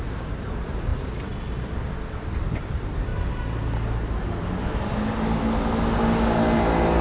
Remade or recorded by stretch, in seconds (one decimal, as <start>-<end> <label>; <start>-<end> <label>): 0.0-0.9 remade; 0.9-2.1 recorded; 2.1-3.1 remade; 3.1-7.0 recorded